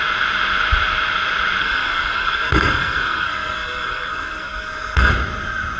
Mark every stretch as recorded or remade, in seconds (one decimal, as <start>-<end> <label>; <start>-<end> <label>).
0.0-1.6 recorded; 1.6-5.1 remade; 5.1-5.8 recorded